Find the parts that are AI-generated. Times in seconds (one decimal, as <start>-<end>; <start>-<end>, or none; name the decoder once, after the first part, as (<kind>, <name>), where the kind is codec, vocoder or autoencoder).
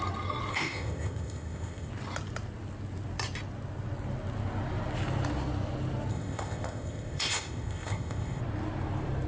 0.5-1.9 (codec, ZipCodec); 6.1-8.4